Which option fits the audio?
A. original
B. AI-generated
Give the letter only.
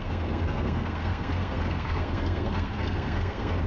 B